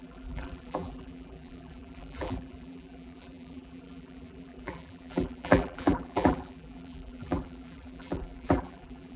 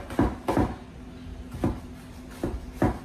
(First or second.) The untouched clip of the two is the second